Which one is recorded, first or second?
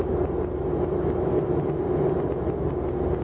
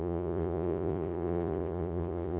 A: first